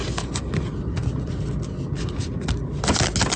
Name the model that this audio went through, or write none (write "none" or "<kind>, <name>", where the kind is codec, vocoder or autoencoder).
none